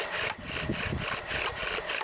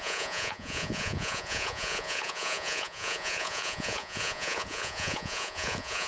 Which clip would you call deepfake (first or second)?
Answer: second